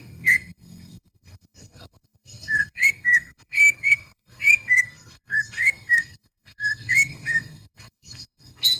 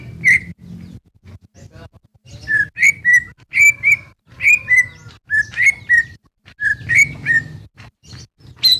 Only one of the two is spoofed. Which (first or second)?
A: first